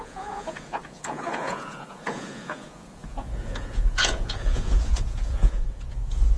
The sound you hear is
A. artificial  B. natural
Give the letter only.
A